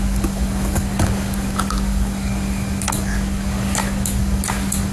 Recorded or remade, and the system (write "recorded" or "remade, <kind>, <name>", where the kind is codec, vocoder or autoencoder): remade, codec, DAC